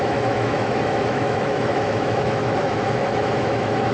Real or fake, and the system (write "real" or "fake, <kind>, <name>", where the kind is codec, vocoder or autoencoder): fake, autoencoder, DAC-VAE